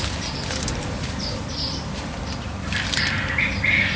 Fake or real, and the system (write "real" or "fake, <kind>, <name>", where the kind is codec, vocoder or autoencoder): real